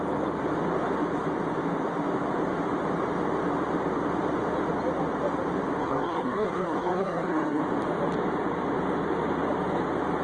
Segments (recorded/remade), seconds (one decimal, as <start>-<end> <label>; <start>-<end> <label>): 0.0-5.8 recorded; 5.8-7.6 remade; 7.6-10.2 recorded